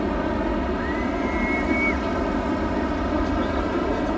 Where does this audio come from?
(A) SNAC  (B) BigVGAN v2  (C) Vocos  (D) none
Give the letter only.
D